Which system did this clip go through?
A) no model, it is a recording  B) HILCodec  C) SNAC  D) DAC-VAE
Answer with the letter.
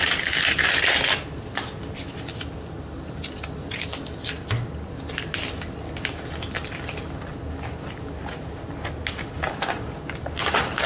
A